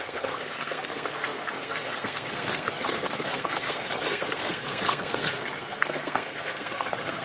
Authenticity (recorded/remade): remade